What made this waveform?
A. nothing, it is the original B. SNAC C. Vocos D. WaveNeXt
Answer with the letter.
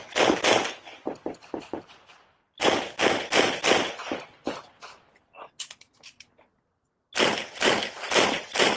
A